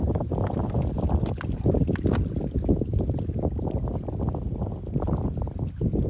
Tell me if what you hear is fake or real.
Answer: real